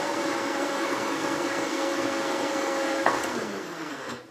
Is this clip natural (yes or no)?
no